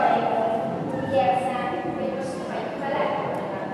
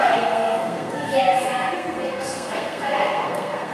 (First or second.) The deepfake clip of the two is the second